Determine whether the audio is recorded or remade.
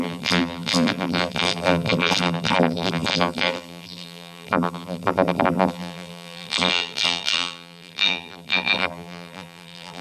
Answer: remade